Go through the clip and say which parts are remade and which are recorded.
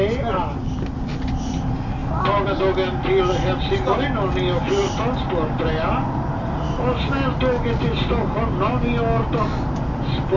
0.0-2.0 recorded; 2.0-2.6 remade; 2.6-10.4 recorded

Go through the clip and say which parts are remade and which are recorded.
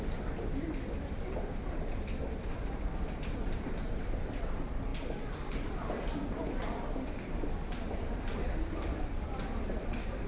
0.0-4.9 remade; 4.9-5.8 recorded; 5.8-10.3 remade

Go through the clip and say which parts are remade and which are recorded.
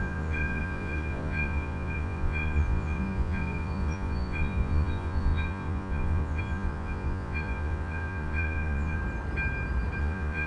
0.0-9.0 remade; 9.0-10.0 recorded; 10.0-10.5 remade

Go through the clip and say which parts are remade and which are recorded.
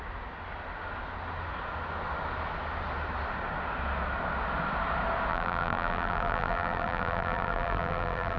0.0-5.3 recorded; 5.3-8.4 remade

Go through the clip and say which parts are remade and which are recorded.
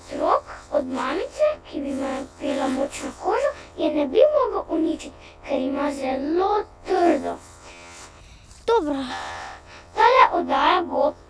0.0-8.2 remade; 8.2-9.1 recorded; 9.1-11.3 remade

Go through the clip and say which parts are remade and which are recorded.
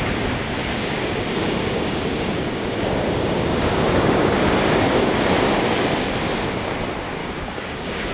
0.0-0.6 recorded; 0.6-5.1 remade; 5.1-7.2 recorded; 7.2-8.1 remade